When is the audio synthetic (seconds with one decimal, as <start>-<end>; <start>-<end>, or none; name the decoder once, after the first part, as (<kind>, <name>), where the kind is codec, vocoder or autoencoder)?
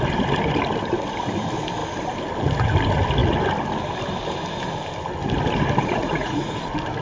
5.8-6.6 (vocoder, Vocos)